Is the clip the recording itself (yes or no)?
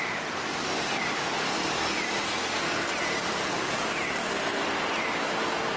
yes